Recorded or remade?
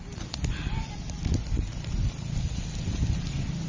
recorded